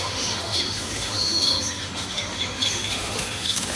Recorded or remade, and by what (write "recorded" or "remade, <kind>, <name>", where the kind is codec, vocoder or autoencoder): remade, autoencoder, DAC-VAE